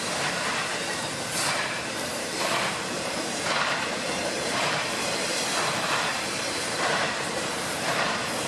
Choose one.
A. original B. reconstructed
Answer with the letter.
B